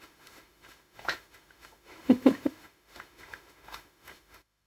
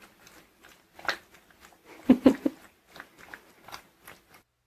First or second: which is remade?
first